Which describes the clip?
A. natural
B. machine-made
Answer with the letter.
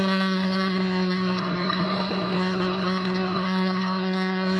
B